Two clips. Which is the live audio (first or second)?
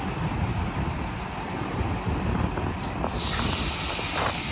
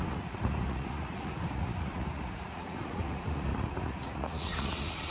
first